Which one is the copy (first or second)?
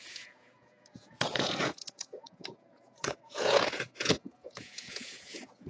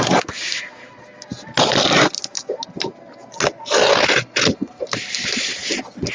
first